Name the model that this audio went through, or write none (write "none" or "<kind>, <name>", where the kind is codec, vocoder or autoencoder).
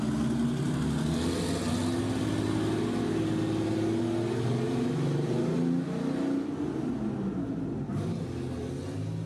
none